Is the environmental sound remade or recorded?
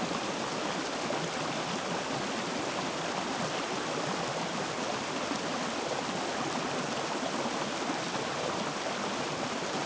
recorded